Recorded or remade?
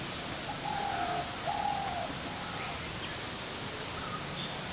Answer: recorded